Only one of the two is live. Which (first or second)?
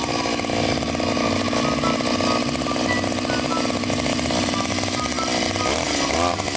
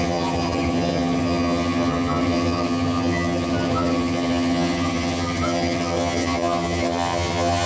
first